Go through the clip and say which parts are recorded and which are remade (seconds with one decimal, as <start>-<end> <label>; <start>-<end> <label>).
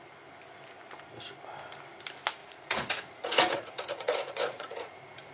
0.0-2.4 recorded; 2.4-5.3 remade